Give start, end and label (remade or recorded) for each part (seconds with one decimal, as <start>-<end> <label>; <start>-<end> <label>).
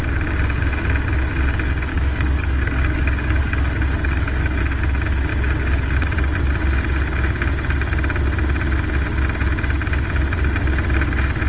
0.0-1.9 recorded; 1.9-4.6 remade; 4.6-11.5 recorded